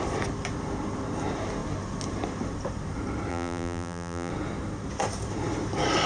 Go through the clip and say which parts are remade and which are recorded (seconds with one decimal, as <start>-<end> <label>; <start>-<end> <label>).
0.0-3.3 recorded; 3.3-4.3 remade; 4.3-6.1 recorded